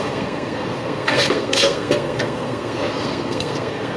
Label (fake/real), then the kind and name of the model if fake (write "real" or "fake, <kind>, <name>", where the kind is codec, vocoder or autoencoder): fake, codec, SNAC